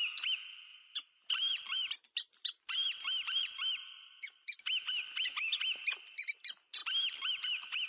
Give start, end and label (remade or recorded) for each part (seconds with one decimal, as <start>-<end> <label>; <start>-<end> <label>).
0.0-6.8 remade; 6.8-7.3 recorded; 7.3-7.9 remade